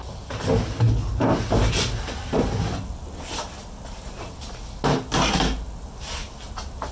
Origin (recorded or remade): recorded